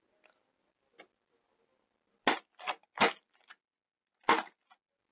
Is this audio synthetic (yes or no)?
no